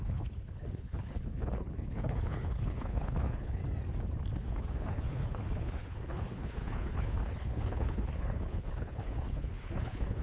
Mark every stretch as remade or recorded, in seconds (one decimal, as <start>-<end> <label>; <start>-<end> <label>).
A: 0.0-3.6 remade; 3.6-4.4 recorded; 4.4-10.2 remade